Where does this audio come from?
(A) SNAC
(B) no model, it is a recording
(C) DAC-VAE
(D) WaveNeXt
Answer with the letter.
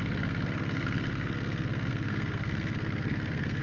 A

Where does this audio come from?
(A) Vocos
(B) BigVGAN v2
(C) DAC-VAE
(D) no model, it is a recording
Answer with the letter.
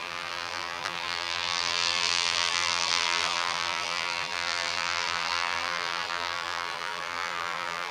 B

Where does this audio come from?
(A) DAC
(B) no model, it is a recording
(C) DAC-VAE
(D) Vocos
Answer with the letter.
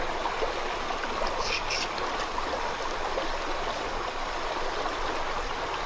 B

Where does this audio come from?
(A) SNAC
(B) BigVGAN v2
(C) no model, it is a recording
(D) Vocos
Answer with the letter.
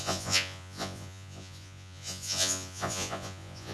D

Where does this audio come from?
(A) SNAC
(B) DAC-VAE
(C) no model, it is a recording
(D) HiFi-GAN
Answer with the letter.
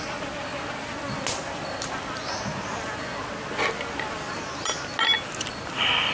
C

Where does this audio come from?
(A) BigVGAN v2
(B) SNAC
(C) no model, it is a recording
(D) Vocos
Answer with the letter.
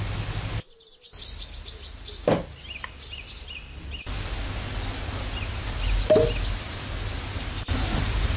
C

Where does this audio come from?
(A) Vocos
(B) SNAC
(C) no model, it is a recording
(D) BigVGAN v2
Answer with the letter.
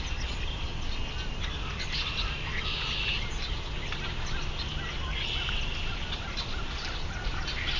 C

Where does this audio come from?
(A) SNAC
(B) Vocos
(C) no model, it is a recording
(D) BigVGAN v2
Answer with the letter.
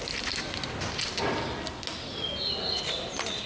C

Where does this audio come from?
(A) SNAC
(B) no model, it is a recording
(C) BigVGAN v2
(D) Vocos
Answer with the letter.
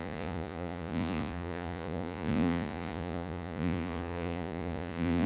D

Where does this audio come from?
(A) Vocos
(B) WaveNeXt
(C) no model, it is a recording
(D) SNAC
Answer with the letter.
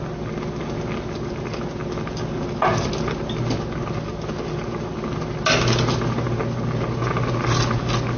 C